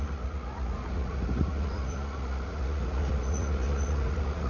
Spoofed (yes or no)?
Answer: yes